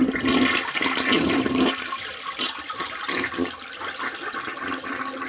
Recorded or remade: recorded